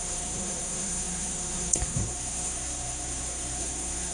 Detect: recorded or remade remade